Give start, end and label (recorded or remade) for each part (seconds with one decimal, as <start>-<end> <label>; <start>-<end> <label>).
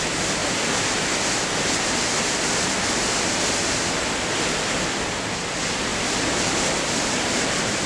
0.0-5.9 recorded; 5.9-7.9 remade